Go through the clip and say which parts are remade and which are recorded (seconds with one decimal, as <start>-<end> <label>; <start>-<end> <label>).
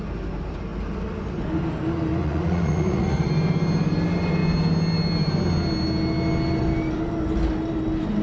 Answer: 0.0-2.2 recorded; 2.2-3.3 remade; 3.3-8.2 recorded